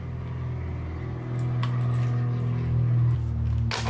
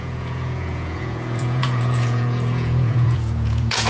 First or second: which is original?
first